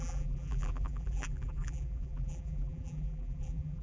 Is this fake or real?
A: fake